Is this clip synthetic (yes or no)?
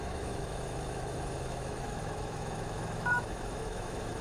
yes